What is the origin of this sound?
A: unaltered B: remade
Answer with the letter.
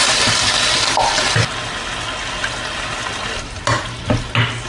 A